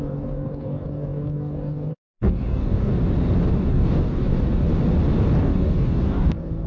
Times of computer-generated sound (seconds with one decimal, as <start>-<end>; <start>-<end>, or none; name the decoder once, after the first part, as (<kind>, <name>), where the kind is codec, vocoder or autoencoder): 0.0-2.9 (codec, DAC); 3.7-4.7; 5.4-6.7